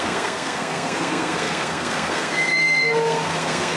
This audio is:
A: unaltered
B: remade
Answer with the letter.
B